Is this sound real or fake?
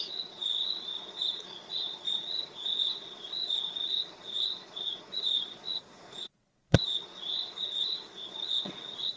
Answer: fake